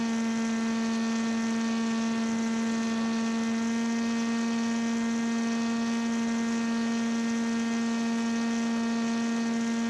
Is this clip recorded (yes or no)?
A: yes